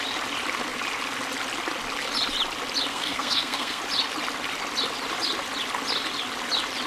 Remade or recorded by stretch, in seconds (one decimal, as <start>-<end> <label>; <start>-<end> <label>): 0.0-2.9 recorded; 2.9-3.8 remade; 3.8-6.9 recorded